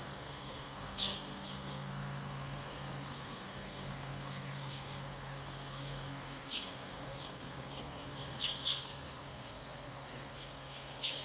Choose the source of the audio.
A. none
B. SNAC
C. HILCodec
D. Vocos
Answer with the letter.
B